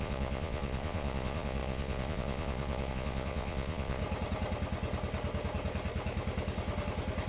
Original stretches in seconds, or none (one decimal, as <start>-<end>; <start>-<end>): 4.0-7.3